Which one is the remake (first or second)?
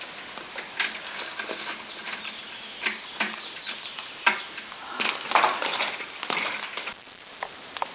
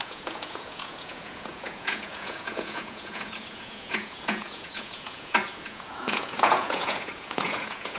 second